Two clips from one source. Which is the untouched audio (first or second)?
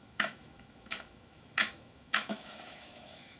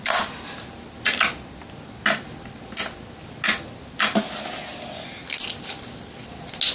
second